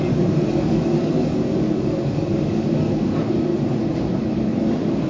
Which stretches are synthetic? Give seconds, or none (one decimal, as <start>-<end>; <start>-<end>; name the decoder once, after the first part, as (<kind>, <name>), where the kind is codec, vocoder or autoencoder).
0.0-3.5 (codec, DAC); 4.2-5.1